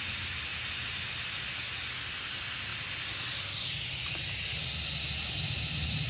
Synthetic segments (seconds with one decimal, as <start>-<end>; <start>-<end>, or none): none